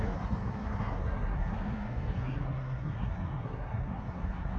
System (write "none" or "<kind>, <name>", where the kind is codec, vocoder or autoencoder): codec, SNAC